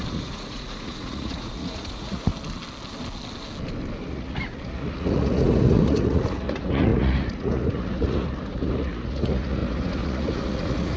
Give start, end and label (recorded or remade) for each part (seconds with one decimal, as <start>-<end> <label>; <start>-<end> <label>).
0.0-2.3 remade; 2.3-4.0 recorded; 4.0-11.0 remade

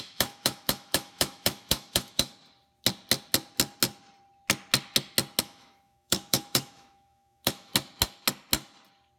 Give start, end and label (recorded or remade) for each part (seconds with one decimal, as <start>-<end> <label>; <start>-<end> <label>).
0.0-2.3 remade; 2.3-5.4 recorded; 5.4-7.7 remade; 7.7-9.2 recorded

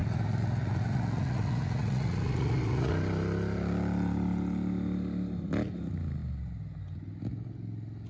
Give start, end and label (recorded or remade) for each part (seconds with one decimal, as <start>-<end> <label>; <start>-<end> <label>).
0.0-2.9 remade; 2.9-8.1 recorded

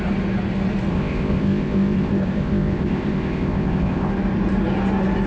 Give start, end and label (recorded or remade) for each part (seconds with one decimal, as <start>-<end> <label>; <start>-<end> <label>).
0.0-0.9 recorded; 0.9-4.1 remade; 4.1-5.3 recorded

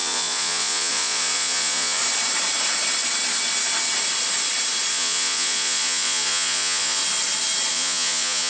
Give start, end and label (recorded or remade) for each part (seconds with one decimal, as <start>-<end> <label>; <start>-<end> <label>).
0.0-2.0 remade; 2.0-4.9 recorded; 4.9-7.0 remade; 7.0-7.7 recorded; 7.7-8.5 remade

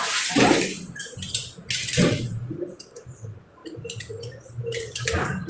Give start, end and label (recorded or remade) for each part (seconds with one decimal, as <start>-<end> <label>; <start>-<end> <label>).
0.0-5.5 remade

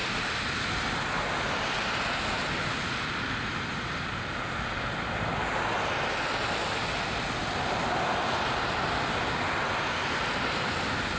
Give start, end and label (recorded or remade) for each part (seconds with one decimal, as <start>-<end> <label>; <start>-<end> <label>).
0.0-11.2 recorded